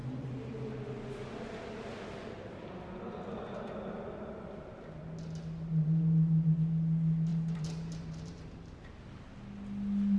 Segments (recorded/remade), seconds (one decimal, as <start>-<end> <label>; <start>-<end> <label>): 0.0-7.3 recorded; 7.3-8.9 remade; 8.9-10.2 recorded